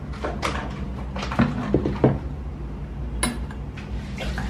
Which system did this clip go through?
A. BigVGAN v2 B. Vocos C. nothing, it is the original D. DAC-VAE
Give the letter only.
C